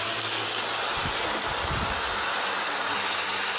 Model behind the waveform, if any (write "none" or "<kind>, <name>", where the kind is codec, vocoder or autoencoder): none